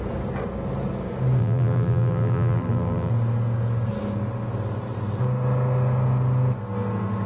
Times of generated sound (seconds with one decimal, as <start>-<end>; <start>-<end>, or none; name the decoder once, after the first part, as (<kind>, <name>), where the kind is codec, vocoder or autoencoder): 1.4-3.1 (vocoder, BigVGAN v2)